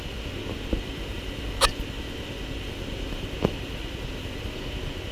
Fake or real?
real